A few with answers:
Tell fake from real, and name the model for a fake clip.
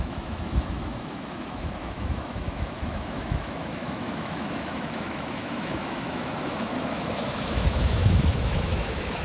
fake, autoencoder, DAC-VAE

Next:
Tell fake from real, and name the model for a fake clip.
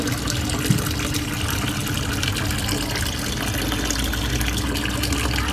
real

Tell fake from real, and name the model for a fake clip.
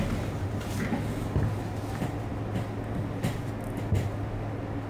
real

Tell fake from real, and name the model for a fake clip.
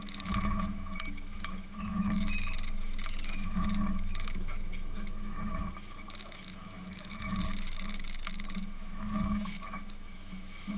fake, autoencoder, DAC-VAE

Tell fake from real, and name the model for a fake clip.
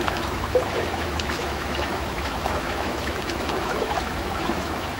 fake, autoencoder, DAC-VAE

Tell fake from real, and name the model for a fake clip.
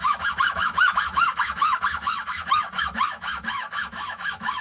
fake, autoencoder, DAC-VAE